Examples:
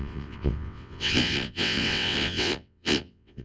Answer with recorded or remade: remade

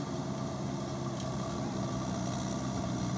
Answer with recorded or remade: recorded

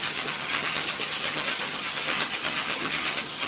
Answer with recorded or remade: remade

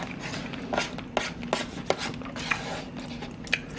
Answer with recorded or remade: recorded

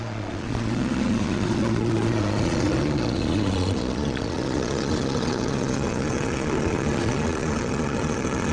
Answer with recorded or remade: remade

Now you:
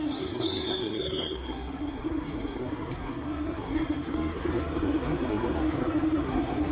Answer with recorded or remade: remade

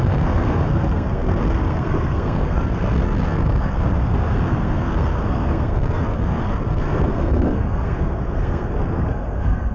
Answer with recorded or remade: remade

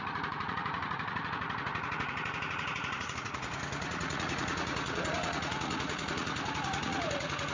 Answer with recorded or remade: remade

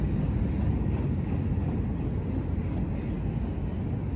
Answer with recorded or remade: recorded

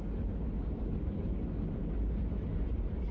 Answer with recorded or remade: recorded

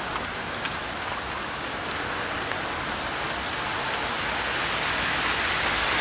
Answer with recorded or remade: recorded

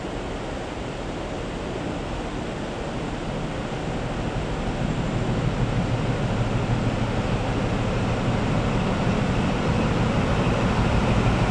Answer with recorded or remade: recorded